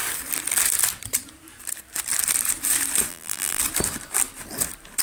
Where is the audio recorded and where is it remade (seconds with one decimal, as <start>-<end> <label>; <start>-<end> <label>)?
0.0-3.1 recorded; 3.1-3.6 remade; 3.6-5.0 recorded